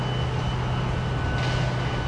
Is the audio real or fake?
real